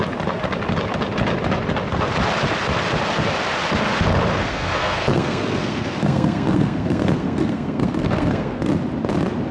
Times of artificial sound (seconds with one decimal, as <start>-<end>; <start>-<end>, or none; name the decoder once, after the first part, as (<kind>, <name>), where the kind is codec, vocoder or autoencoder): 4.4-8.7 (codec, SNAC)